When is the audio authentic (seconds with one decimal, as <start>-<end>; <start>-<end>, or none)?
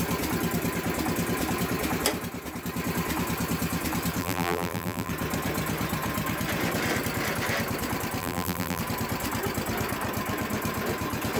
0.0-4.2; 5.1-8.2; 8.8-11.4